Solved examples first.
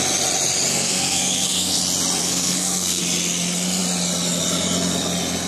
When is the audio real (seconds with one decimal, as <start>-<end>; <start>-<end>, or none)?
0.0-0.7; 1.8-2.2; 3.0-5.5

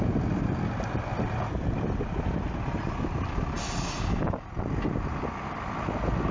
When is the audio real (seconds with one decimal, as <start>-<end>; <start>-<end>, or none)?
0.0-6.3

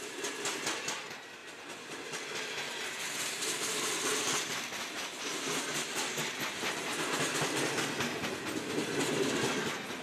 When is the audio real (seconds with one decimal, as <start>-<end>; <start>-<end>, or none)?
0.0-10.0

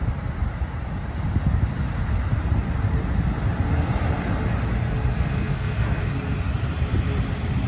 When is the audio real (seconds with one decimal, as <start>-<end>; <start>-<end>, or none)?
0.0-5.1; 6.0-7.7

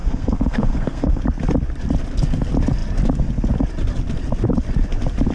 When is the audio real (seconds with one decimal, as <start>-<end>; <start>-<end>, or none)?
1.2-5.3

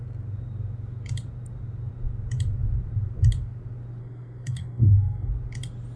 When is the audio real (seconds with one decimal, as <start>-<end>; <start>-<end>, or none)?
0.0-4.0; 5.3-6.0

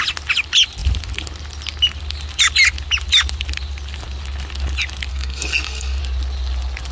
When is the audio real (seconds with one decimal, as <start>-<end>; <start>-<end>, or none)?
0.0-5.1; 6.0-6.9